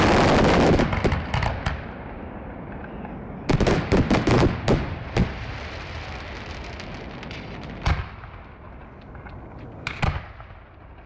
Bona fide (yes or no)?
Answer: yes